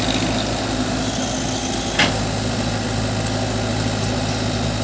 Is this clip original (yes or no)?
yes